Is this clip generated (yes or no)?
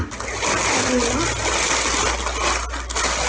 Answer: no